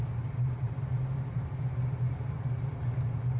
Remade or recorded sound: remade